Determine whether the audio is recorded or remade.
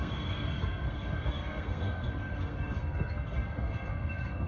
remade